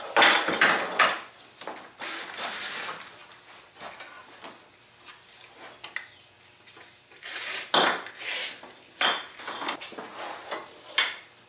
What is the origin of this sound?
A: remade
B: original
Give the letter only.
B